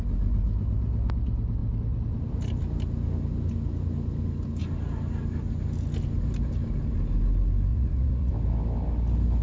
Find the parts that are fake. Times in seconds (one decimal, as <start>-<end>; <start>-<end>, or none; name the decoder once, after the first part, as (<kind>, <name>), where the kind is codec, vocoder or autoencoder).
7.7-8.3 (vocoder, Vocos)